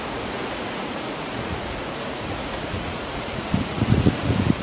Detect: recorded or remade remade